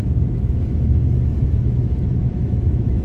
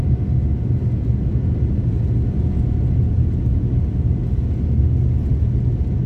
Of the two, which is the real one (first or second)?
second